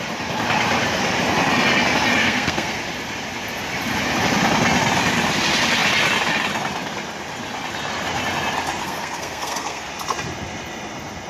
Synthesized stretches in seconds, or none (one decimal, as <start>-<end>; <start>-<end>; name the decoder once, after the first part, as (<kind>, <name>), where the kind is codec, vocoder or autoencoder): 2.2-2.8 (codec, SNAC); 8.8-9.9